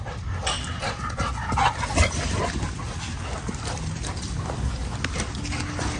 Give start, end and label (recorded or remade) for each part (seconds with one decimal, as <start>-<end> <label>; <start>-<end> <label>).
0.0-6.0 recorded